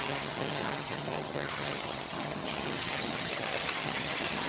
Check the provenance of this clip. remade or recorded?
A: remade